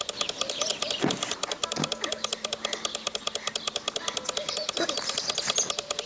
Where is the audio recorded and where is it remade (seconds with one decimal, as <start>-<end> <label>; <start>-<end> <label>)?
0.0-6.1 recorded